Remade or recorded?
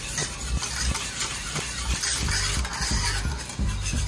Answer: recorded